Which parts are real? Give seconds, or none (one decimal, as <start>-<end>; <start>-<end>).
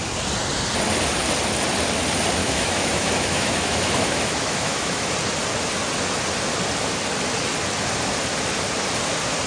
0.0-2.4; 5.1-9.5